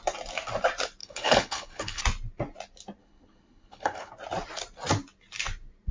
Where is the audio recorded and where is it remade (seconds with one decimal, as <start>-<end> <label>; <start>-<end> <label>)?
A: 0.0-1.0 recorded; 1.0-2.0 remade; 2.0-3.0 recorded; 3.0-4.1 remade; 4.1-5.9 recorded